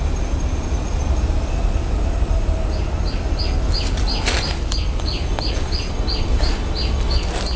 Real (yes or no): yes